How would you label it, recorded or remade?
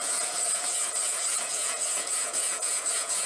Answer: remade